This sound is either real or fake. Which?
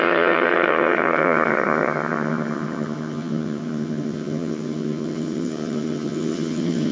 fake